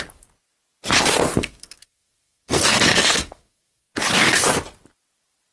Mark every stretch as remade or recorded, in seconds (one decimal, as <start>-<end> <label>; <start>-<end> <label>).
0.0-1.4 recorded; 1.4-3.9 remade; 3.9-5.5 recorded